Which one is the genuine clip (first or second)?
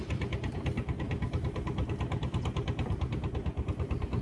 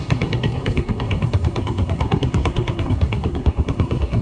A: first